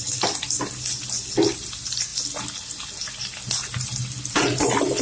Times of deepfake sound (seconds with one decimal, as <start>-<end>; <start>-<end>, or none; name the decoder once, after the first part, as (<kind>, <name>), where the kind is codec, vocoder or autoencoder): none